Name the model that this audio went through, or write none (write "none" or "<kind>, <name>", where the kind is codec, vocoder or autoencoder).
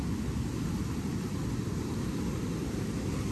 none